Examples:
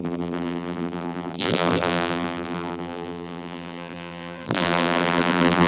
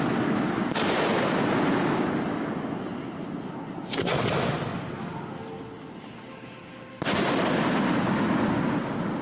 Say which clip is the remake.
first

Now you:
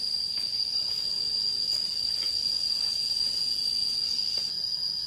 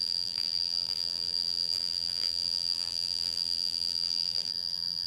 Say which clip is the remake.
second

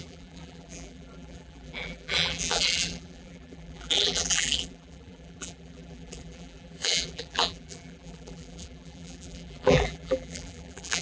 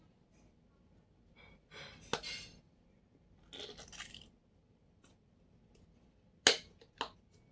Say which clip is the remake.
first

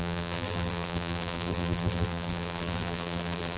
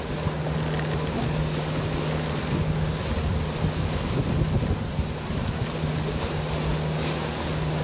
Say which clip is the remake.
first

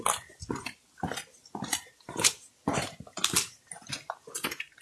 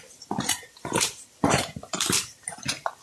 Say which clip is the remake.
second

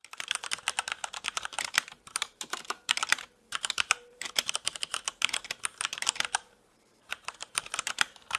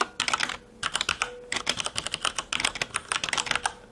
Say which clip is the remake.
first